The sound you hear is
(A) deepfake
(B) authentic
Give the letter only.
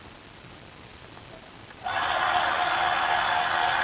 B